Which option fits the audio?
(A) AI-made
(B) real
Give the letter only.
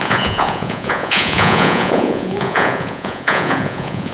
A